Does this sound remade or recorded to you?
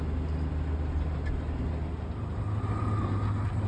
recorded